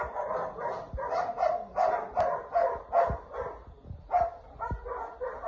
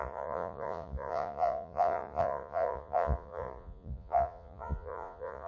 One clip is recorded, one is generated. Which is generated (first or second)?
second